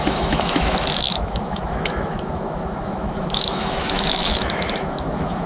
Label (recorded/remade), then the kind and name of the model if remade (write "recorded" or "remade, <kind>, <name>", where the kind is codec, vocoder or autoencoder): remade, autoencoder, DAC-VAE